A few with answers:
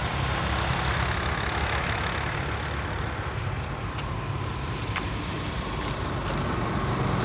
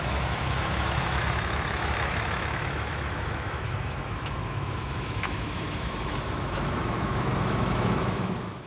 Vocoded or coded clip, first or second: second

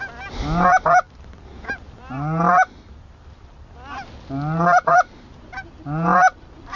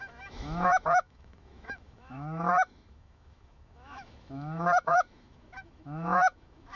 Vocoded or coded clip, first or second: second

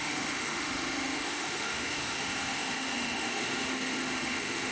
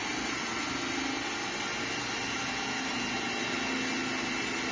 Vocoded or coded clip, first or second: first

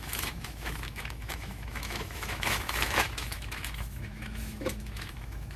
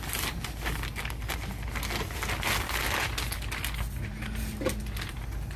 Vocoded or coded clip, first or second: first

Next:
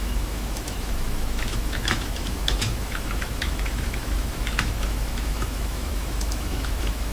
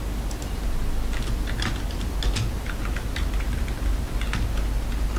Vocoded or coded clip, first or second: first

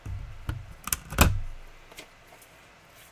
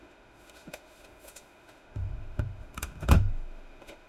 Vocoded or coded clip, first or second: second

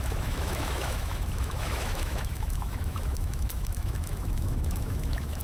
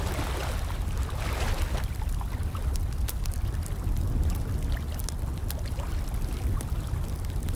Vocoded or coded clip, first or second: first